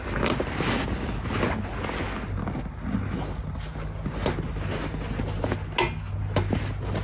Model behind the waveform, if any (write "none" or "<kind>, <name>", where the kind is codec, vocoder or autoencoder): none